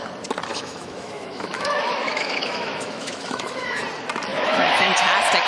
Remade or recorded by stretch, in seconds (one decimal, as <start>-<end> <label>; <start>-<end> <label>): 0.0-0.5 recorded; 0.5-3.8 remade; 3.8-4.3 recorded; 4.3-4.9 remade; 4.9-5.5 recorded